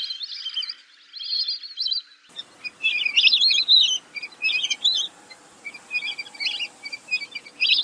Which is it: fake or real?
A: real